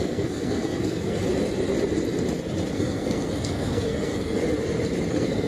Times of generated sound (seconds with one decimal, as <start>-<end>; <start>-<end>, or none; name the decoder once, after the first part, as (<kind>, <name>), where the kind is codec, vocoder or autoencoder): 0.0-1.2 (codec, SNAC); 2.7-4.4; 5.1-5.5